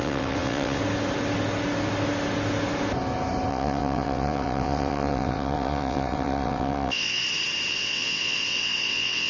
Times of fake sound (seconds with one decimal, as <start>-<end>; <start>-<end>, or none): 0.0-0.8; 3.5-7.2; 7.7-9.3